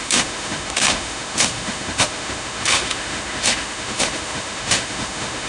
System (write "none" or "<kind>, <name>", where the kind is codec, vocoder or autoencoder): autoencoder, DAC-VAE